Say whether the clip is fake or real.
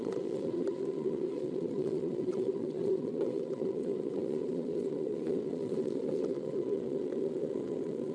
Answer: fake